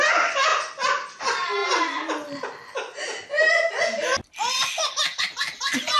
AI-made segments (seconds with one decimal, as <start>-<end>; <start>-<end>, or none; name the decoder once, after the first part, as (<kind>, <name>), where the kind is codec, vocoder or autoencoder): 0.0-1.6 (vocoder, BigVGAN v2); 5.2-6.0